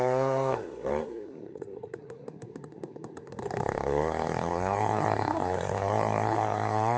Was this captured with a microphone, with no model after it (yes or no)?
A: no